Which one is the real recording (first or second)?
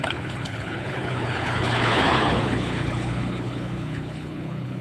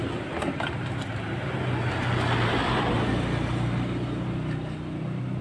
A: second